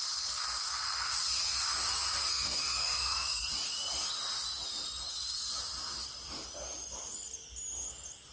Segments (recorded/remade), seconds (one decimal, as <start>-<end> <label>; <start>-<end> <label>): 0.0-2.2 recorded; 2.2-3.5 remade; 3.5-8.3 recorded